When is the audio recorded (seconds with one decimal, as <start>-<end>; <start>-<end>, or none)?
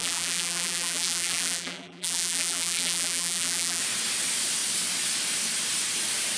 3.8-6.4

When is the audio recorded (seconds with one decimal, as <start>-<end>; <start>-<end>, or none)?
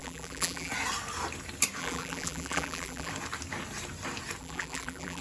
0.7-1.8; 3.1-4.4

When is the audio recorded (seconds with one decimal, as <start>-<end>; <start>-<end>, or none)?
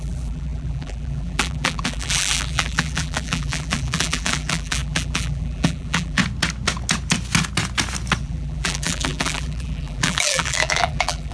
6.2-8.2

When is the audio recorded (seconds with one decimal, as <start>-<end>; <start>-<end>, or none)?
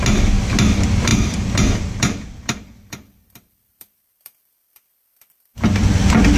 0.0-1.1; 4.9-6.4